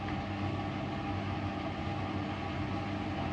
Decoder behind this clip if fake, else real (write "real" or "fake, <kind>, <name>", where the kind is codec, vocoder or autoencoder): real